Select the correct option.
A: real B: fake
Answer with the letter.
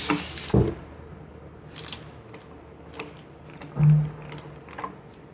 A